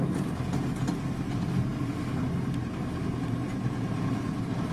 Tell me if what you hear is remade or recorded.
recorded